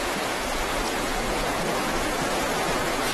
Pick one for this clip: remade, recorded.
remade